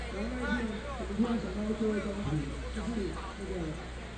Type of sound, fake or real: real